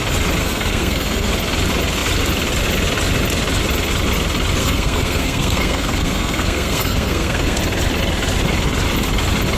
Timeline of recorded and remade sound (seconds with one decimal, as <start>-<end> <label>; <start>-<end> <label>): 0.0-0.4 recorded; 0.4-1.3 remade; 1.3-4.6 recorded; 4.6-7.6 remade; 7.6-9.6 recorded